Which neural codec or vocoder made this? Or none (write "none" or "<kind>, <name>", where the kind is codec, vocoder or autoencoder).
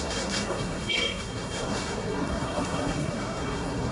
codec, SNAC